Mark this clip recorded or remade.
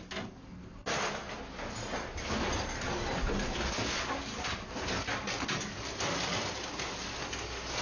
recorded